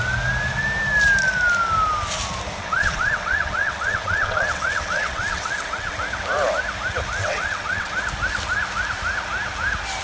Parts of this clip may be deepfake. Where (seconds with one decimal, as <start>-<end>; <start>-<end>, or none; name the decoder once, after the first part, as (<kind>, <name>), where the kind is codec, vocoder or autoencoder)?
2.6-5.9 (vocoder, WaveNeXt); 7.2-7.9